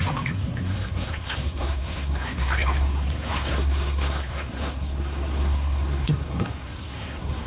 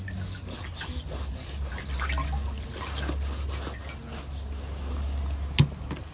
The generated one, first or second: first